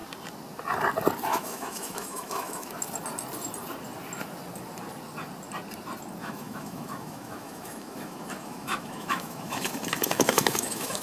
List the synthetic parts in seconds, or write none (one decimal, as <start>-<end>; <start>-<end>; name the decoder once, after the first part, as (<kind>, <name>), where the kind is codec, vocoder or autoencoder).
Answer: 1.3-2.7 (autoencoder, DAC-VAE); 6.2-11.0